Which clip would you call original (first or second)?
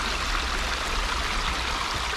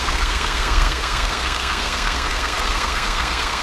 first